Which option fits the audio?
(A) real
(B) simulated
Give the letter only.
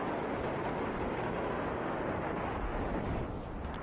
A